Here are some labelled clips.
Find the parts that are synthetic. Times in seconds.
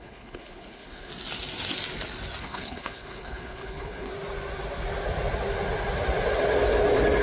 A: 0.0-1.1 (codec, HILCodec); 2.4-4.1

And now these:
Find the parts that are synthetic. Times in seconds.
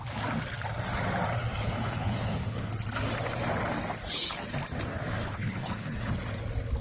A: 1.6-2.7 (codec, HILCodec); 5.2-6.1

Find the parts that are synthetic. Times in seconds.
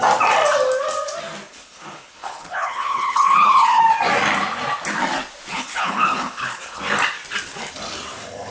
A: 1.5-3.8 (codec, HILCodec); 5.5-6.8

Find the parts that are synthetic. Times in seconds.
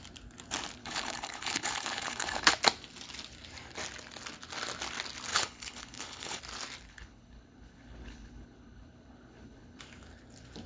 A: 0.8-2.5 (codec, HILCodec); 5.3-6.4; 6.9-9.8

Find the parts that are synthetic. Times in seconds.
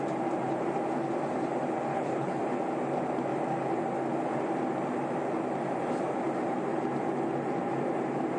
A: 1.9-2.4 (codec, HILCodec)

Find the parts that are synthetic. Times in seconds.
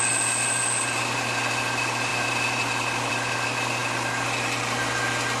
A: none